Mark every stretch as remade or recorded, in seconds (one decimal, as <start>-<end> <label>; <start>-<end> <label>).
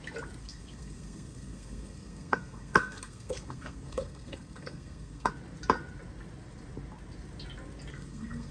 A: 0.0-0.4 recorded; 0.4-5.3 remade; 5.3-7.9 recorded; 7.9-8.5 remade